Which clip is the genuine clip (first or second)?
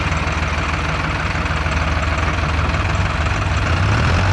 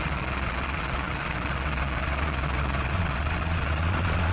first